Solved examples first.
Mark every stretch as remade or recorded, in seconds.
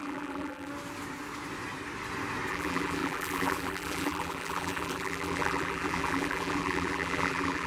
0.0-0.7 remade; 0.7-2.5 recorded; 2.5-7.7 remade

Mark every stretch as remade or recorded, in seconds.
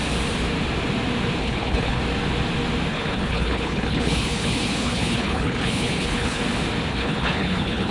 0.0-1.4 recorded; 1.4-2.0 remade; 2.0-2.9 recorded; 2.9-6.4 remade; 6.4-6.9 recorded; 6.9-7.9 remade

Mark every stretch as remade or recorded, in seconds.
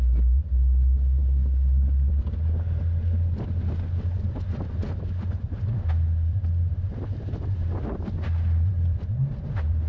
0.0-9.9 recorded